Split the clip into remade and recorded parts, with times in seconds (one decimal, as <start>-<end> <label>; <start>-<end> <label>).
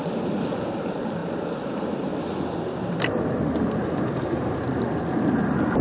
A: 0.0-5.8 recorded